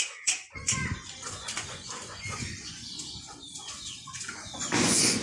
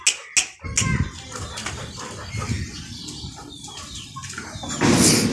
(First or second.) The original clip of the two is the second